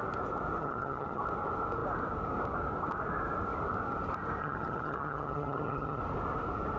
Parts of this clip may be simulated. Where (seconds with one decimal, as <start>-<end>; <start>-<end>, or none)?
0.6-1.2; 4.4-6.0